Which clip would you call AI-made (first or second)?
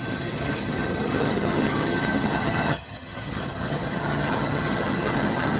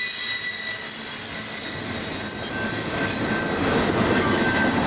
first